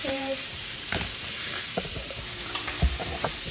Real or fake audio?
fake